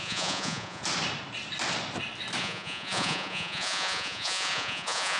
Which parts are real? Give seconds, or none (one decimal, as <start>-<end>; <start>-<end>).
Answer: 0.8-2.4